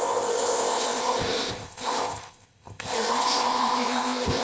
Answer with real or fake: fake